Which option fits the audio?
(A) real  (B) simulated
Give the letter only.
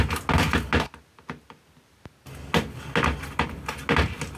A